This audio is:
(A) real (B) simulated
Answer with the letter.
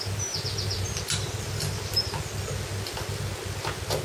A